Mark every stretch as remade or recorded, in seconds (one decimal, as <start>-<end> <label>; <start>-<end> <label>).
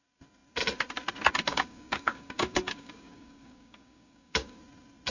0.0-1.5 recorded; 1.5-4.6 remade; 4.6-5.1 recorded